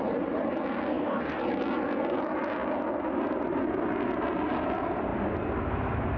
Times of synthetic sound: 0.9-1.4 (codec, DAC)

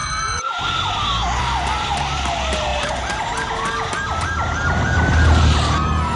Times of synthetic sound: none

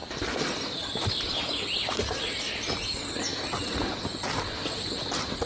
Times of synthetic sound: none